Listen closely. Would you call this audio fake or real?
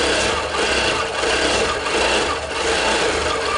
real